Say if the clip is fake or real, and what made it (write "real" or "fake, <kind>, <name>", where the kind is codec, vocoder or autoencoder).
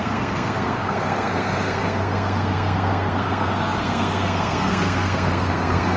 fake, codec, SNAC